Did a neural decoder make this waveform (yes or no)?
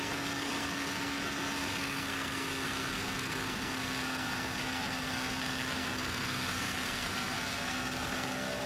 yes